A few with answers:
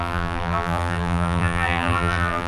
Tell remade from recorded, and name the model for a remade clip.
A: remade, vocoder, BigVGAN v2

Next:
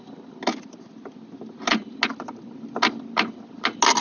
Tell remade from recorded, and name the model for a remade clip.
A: recorded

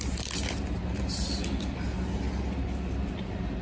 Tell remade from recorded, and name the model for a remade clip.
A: recorded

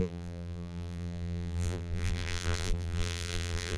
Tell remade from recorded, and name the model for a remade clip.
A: remade, vocoder, BigVGAN v2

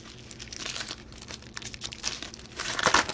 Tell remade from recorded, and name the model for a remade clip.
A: recorded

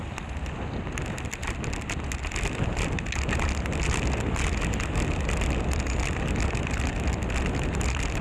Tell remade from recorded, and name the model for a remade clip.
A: recorded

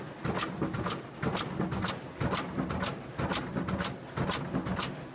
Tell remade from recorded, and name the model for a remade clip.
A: recorded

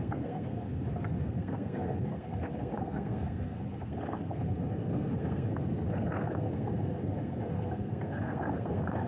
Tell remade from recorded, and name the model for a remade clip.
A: remade, codec, SNAC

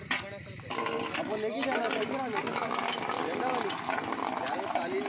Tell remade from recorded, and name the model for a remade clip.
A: recorded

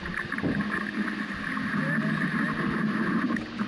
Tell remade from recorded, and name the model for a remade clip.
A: recorded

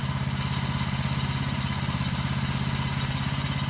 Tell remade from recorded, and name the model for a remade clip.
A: recorded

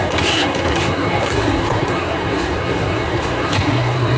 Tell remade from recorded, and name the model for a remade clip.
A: remade, codec, SNAC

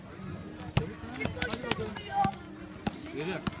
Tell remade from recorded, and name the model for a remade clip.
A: recorded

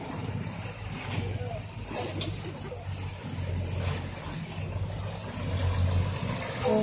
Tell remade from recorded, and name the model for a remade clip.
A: recorded